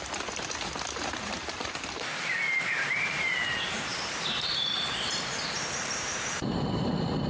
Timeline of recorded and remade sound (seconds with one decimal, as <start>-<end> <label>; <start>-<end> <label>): 0.0-2.1 remade; 2.1-2.9 recorded; 2.9-3.9 remade; 3.9-4.5 recorded; 4.5-7.3 remade